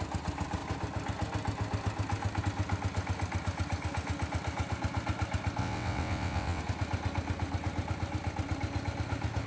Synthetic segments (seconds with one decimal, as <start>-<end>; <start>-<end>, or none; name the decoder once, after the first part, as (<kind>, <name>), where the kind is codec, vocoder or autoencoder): 5.6-6.6 (vocoder, WaveNeXt)